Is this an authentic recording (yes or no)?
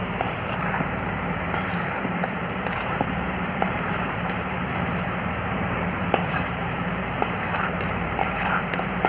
no